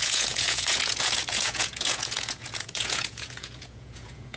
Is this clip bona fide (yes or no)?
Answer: no